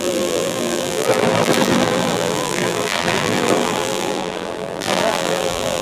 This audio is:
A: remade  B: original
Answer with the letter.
A